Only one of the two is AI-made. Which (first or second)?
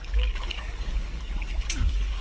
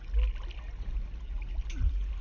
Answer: first